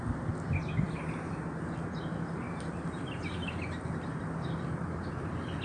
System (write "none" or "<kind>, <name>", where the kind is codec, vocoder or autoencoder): none